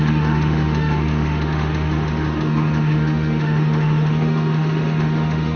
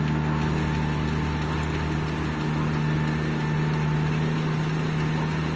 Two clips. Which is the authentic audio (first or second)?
second